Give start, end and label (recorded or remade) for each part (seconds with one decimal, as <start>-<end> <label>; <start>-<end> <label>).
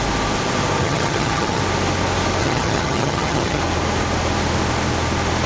0.0-0.8 recorded; 0.8-1.6 remade; 1.6-2.4 recorded; 2.4-3.6 remade; 3.6-5.5 recorded